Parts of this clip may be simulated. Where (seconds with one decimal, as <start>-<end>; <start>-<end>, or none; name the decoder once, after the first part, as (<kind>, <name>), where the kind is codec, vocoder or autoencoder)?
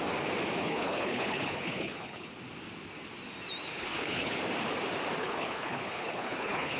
0.6-2.3 (codec, HILCodec); 3.7-4.4; 5.2-6.8